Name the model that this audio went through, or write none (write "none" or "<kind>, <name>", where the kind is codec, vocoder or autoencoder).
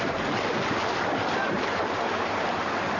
none